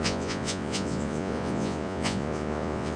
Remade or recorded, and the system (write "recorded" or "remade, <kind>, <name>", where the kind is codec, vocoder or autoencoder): remade, vocoder, Vocos